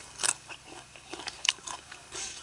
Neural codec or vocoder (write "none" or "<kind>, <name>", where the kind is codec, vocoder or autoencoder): codec, DAC